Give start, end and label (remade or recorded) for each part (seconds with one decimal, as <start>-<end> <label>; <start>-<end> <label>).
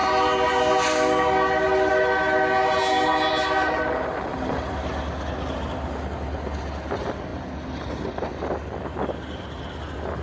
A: 0.0-10.2 recorded